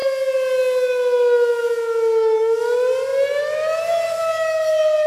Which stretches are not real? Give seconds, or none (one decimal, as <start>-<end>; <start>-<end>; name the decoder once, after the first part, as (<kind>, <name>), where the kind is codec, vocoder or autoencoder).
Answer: none